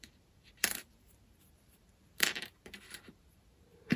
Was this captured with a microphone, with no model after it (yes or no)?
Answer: no